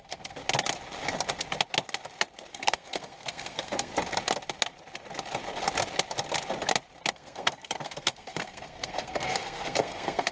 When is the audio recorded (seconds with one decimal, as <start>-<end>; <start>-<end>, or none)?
0.4-2.5; 3.9-7.1